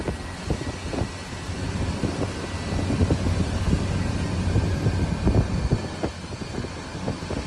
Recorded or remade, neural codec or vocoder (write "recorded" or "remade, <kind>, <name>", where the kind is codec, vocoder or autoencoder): recorded